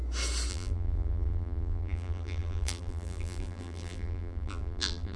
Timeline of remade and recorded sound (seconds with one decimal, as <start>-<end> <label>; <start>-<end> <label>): 0.0-0.5 recorded; 0.5-5.2 remade